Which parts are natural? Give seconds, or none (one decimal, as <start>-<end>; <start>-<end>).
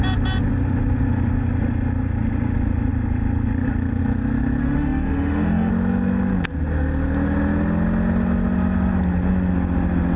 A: 0.0-4.6; 5.7-10.2